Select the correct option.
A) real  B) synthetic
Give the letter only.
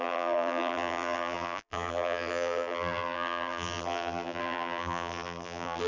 B